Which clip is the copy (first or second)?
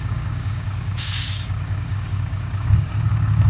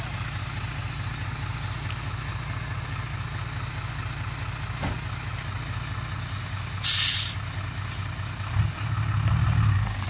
first